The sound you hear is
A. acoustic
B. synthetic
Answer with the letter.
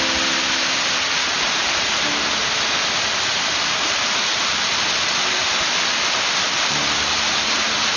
A